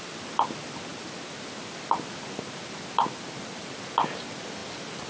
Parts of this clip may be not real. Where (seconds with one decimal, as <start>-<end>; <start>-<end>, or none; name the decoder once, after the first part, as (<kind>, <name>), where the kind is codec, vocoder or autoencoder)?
none